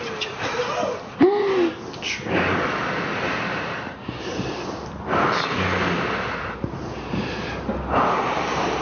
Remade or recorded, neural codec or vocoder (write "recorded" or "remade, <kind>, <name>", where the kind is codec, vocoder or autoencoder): recorded